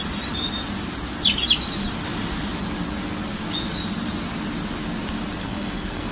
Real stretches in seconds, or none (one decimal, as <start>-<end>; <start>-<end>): 0.0-5.4